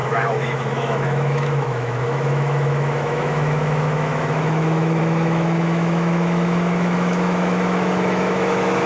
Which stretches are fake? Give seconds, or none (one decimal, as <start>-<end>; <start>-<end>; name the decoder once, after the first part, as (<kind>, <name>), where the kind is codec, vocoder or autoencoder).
0.0-8.9 (autoencoder, DAC-VAE)